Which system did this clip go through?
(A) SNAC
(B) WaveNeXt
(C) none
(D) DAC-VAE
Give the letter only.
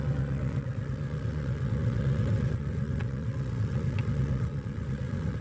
B